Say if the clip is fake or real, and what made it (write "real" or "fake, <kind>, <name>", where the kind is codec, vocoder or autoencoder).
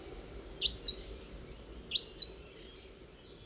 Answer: real